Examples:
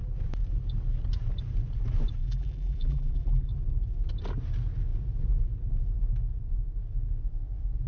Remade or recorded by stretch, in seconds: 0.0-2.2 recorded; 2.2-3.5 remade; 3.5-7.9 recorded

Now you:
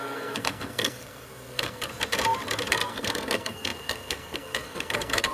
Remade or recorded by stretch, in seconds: 0.0-1.9 remade; 1.9-2.7 recorded; 2.7-5.3 remade

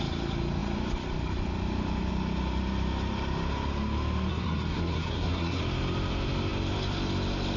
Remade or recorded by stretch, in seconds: 0.0-4.3 recorded; 4.3-5.6 remade; 5.6-7.6 recorded

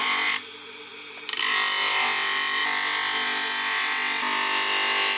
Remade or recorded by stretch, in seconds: 0.0-5.2 recorded

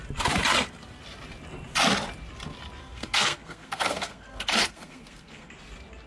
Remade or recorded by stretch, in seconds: 0.0-2.8 recorded; 2.8-5.5 remade; 5.5-6.1 recorded

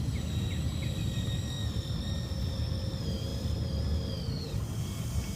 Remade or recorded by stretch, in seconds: 0.0-5.4 recorded

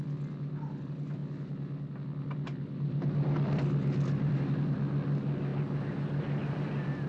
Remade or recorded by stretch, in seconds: 0.0-7.1 recorded